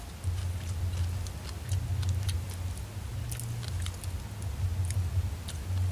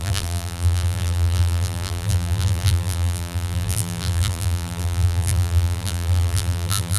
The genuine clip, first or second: first